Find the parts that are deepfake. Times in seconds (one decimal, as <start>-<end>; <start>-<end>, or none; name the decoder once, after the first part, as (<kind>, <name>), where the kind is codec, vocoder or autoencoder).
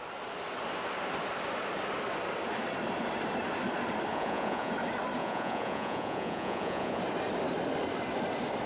4.1-4.7 (vocoder, Vocos); 5.2-7.0